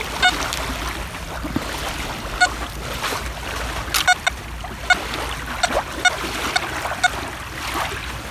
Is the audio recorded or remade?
recorded